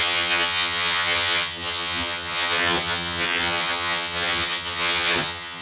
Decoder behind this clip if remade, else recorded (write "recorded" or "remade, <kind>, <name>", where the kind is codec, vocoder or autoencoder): remade, vocoder, HiFi-GAN